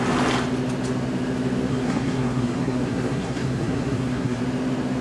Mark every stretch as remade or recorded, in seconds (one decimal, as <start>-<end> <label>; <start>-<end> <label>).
0.0-1.7 recorded; 1.7-4.4 remade; 4.4-5.0 recorded